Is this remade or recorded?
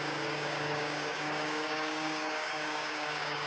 remade